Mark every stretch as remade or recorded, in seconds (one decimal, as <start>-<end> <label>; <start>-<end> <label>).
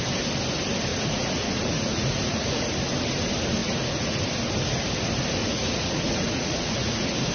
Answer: 0.0-0.9 recorded; 0.9-2.7 remade; 2.7-3.6 recorded; 3.6-4.2 remade; 4.2-5.4 recorded; 5.4-7.3 remade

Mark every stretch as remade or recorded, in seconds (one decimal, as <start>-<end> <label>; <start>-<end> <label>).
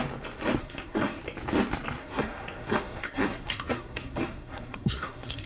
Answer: 0.0-0.6 recorded; 0.6-1.2 remade; 1.2-2.0 recorded; 2.0-5.5 remade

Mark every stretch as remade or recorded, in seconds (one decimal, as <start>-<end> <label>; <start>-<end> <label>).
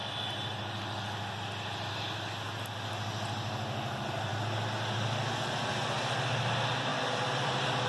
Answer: 0.0-1.9 remade; 1.9-6.9 recorded; 6.9-7.9 remade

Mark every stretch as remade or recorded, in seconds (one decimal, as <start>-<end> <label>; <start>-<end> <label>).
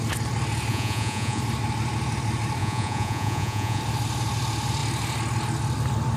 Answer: 0.0-0.7 recorded; 0.7-1.4 remade; 1.4-2.6 recorded; 2.6-3.8 remade; 3.8-6.2 recorded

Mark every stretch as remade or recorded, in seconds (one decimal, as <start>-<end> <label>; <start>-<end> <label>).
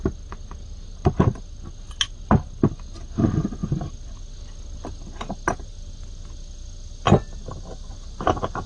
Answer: 0.0-8.7 recorded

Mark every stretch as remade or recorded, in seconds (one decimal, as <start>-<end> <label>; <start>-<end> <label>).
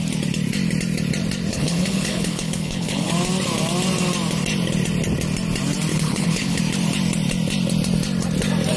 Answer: 0.0-1.5 recorded; 1.5-3.1 remade; 3.1-5.9 recorded; 5.9-6.6 remade; 6.6-8.8 recorded